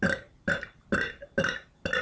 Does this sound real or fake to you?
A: real